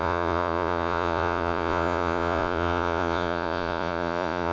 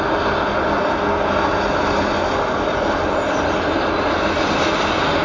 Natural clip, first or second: second